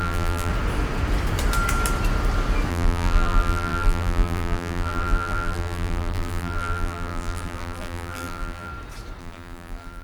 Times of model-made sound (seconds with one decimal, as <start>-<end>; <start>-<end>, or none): 0.0-0.5; 2.7-8.7; 9.2-10.0

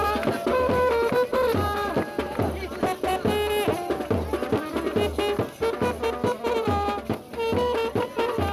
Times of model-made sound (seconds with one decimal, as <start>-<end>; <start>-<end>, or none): 0.5-1.9

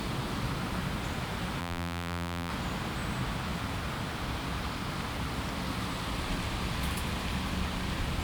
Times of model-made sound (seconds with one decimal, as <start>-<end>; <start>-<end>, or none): 1.6-2.5

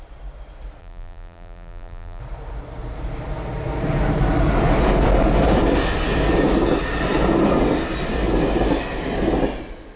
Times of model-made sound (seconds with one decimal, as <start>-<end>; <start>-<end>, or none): 0.8-2.2

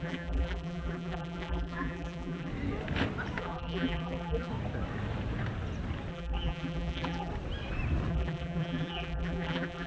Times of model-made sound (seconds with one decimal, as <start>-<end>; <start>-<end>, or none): 0.0-2.5; 3.4-4.5; 6.1-7.3; 8.1-9.9